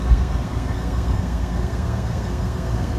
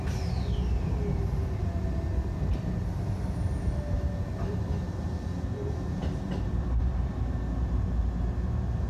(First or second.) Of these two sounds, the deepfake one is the first